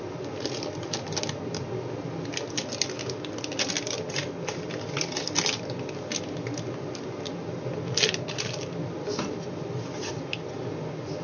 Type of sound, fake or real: real